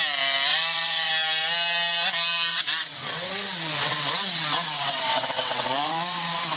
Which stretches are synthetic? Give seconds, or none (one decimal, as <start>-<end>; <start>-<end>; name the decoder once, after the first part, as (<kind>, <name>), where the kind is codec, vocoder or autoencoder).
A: 0.5-1.1 (vocoder, WaveNeXt); 2.5-6.6